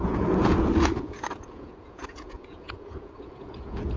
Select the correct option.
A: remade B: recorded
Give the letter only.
A